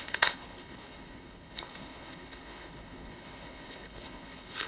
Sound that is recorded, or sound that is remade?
remade